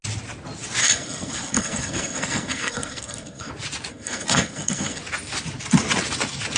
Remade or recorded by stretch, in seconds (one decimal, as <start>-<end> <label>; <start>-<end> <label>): 0.0-0.8 recorded; 0.8-3.5 remade; 3.5-3.9 recorded; 3.9-5.0 remade; 5.0-6.6 recorded